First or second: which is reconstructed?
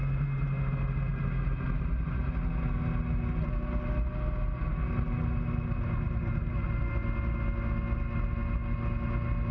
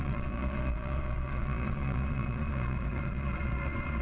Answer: second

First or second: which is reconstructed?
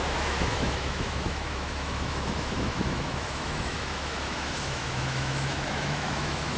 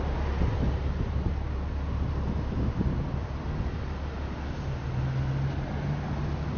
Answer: first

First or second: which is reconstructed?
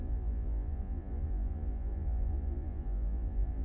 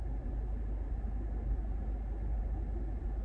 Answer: first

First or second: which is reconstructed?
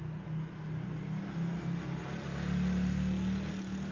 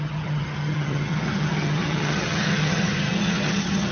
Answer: second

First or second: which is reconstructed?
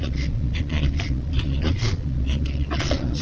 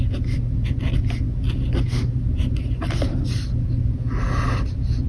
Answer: first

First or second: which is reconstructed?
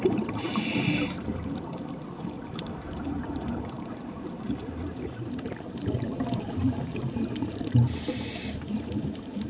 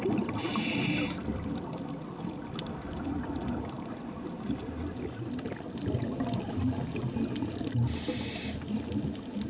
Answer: first